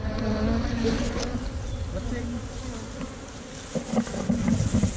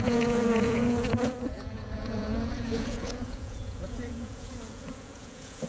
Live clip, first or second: first